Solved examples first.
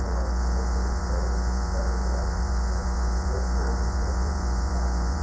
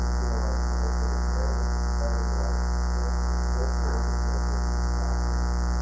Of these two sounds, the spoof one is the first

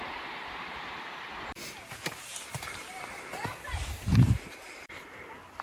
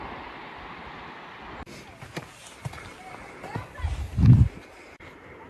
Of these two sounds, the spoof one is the first